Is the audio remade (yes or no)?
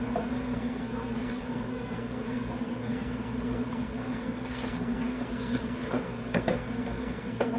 yes